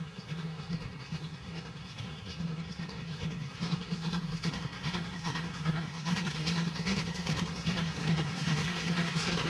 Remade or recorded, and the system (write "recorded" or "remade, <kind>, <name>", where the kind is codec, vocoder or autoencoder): remade, codec, SNAC